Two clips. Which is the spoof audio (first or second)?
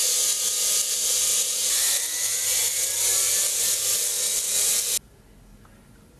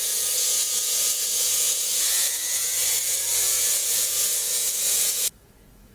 second